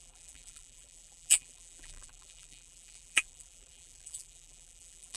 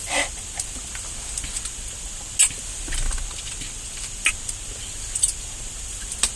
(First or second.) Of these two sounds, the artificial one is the first